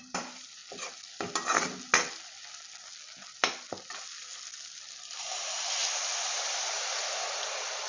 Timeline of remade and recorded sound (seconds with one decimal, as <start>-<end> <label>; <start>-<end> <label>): 0.0-0.6 remade; 0.6-5.2 recorded; 5.2-7.9 remade